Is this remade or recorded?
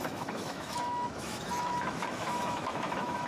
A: remade